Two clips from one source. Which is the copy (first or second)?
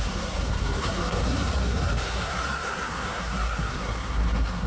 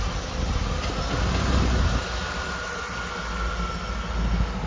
first